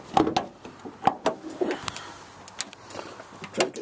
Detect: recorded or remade recorded